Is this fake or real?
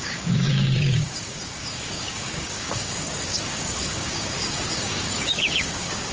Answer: fake